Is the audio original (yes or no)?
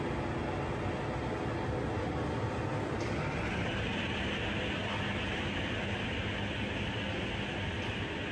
yes